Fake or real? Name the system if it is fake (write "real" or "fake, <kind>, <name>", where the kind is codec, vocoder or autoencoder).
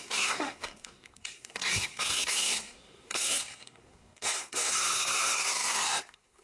fake, codec, SNAC